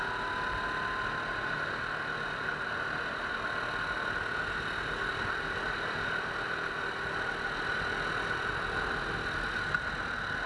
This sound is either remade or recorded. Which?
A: recorded